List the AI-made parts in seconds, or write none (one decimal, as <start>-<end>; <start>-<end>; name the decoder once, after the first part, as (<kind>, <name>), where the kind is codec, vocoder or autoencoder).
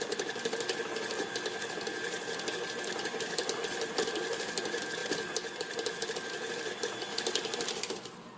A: 3.4-4.5 (vocoder, BigVGAN v2)